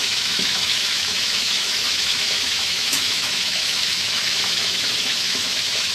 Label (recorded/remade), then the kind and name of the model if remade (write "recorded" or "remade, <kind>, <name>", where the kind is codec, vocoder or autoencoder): remade, autoencoder, DAC-VAE